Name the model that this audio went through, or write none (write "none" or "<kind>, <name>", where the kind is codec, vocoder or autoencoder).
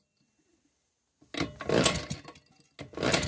none